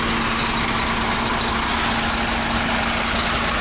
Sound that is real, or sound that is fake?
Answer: real